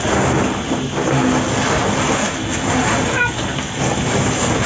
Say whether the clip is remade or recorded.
recorded